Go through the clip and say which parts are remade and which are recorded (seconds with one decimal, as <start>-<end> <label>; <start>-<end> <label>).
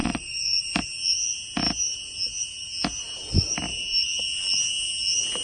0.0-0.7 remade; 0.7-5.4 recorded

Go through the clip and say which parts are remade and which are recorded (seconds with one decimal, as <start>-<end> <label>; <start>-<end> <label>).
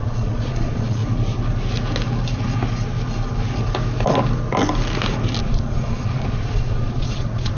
0.0-1.0 remade; 1.0-5.4 recorded; 5.4-7.6 remade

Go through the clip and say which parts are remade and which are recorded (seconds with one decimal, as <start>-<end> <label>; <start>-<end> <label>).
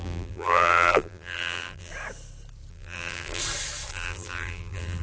0.0-1.9 remade; 1.9-2.7 recorded; 2.7-3.4 remade; 3.4-3.9 recorded; 3.9-5.0 remade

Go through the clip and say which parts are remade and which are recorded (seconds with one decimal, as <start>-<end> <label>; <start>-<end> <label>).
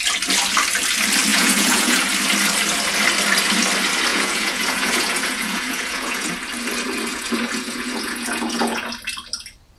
0.0-1.3 recorded; 1.3-2.0 remade; 2.0-4.1 recorded; 4.1-6.3 remade; 6.3-7.1 recorded; 7.1-8.9 remade; 8.9-9.8 recorded